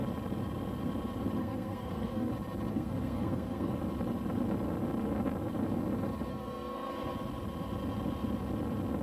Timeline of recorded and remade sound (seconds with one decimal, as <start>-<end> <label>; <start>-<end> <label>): 0.0-1.4 recorded; 1.4-2.3 remade; 2.3-2.7 recorded; 2.7-3.7 remade; 3.7-6.3 recorded; 6.3-6.9 remade; 6.9-9.0 recorded